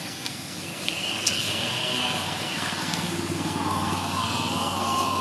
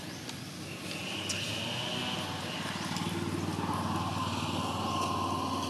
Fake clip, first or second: first